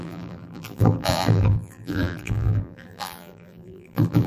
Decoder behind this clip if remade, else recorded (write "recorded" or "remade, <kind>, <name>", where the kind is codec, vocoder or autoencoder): remade, vocoder, BigVGAN v2